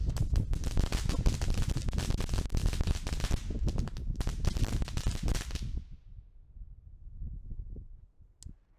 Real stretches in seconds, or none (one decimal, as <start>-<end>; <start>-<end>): 0.0-8.8